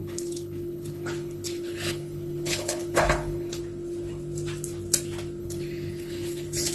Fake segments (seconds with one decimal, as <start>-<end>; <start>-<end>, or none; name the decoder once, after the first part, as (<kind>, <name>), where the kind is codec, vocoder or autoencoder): 0.0-3.6 (codec, HILCodec); 5.4-6.7